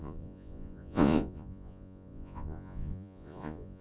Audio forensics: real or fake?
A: fake